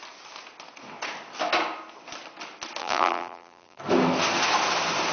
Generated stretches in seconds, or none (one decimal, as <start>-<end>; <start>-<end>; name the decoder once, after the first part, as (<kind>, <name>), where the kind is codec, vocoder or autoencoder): 2.8-3.8 (vocoder, BigVGAN v2)